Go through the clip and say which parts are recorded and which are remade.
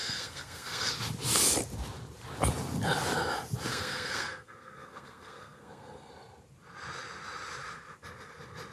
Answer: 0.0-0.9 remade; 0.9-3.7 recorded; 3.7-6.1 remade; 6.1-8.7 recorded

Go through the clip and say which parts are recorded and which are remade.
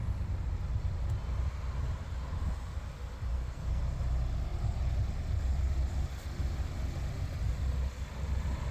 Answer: 0.0-3.3 recorded; 3.3-3.8 remade; 3.8-8.7 recorded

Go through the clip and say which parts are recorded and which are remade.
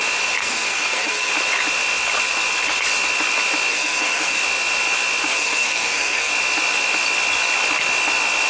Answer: 0.0-0.4 recorded; 0.4-1.3 remade; 1.3-3.7 recorded; 3.7-4.4 remade; 4.4-5.3 recorded; 5.3-6.3 remade; 6.3-8.5 recorded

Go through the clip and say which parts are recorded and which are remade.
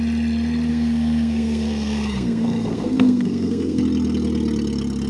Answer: 0.0-0.7 recorded; 0.7-3.8 remade; 3.8-5.1 recorded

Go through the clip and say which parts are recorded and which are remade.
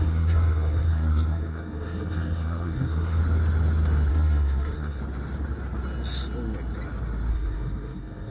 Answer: 0.0-3.2 remade; 3.2-4.1 recorded; 4.1-5.0 remade; 5.0-7.3 recorded; 7.3-8.3 remade